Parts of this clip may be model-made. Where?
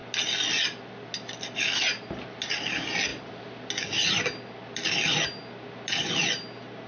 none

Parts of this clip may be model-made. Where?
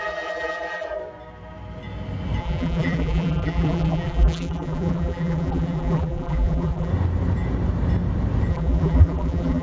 0.0-1.0 (vocoder, BigVGAN v2); 2.4-6.9; 8.5-9.6